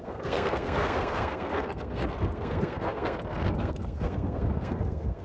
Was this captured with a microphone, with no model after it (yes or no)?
no